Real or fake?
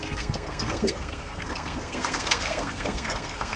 fake